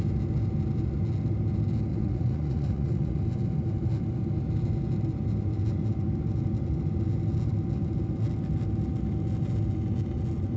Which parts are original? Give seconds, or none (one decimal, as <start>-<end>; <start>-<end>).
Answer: 0.0-1.9; 3.2-10.6